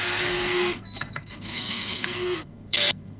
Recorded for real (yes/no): no